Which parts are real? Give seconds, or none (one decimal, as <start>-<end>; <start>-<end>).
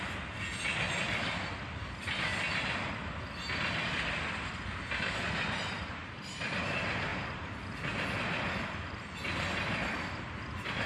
0.0-10.9